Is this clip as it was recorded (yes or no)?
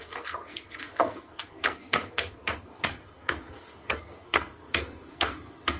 no